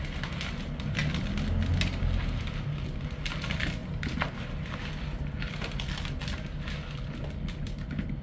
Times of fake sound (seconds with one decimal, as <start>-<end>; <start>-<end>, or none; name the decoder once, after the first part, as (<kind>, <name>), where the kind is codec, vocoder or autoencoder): none